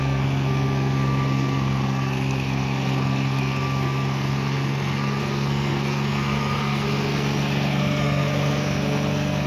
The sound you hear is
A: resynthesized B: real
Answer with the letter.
A